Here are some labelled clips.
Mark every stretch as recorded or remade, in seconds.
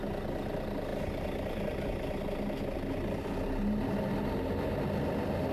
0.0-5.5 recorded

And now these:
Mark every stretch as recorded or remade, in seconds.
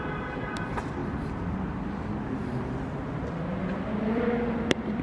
0.0-1.0 remade; 1.0-4.0 recorded; 4.0-5.0 remade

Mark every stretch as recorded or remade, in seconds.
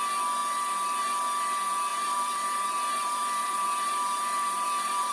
0.0-1.9 recorded; 1.9-5.1 remade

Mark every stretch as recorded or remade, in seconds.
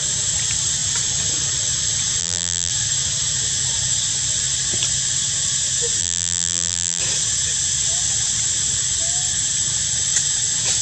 0.0-2.2 recorded; 2.2-2.7 remade; 2.7-6.0 recorded; 6.0-7.0 remade; 7.0-10.8 recorded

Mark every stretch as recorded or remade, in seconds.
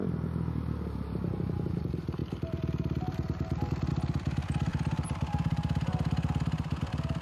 0.0-2.2 recorded; 2.2-3.9 remade; 3.9-4.7 recorded; 4.7-6.8 remade; 6.8-7.2 recorded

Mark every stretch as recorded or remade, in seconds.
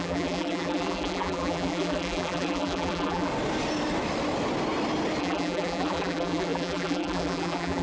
0.0-3.3 remade; 3.3-5.2 recorded; 5.2-7.8 remade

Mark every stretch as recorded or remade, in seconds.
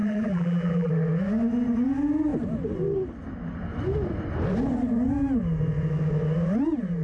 0.0-0.9 remade; 0.9-7.0 recorded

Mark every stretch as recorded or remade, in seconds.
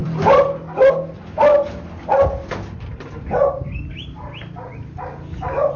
0.0-0.6 remade; 0.6-5.8 recorded